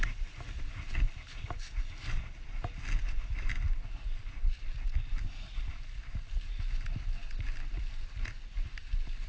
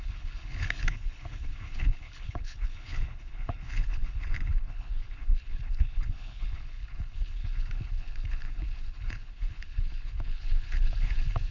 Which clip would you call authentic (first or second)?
first